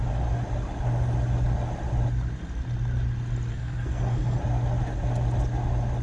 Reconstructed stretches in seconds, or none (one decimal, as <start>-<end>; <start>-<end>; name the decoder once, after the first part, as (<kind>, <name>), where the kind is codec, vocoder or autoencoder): 3.5-4.4 (codec, SNAC)